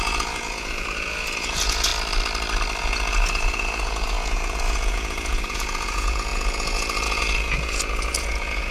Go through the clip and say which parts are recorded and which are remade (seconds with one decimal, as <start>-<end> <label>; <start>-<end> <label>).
0.0-1.9 remade; 1.9-2.8 recorded; 2.8-8.7 remade